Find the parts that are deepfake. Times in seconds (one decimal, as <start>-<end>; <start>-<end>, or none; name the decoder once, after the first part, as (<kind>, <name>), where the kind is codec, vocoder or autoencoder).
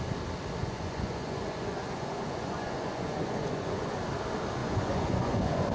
0.6-4.0 (vocoder, Vocos); 4.6-5.7